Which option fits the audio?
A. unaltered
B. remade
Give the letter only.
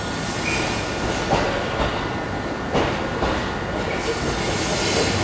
A